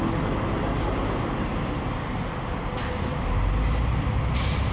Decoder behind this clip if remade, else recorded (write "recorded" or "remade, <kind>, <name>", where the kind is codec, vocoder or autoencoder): recorded